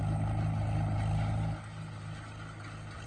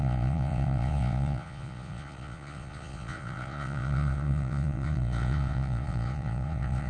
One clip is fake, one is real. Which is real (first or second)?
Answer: first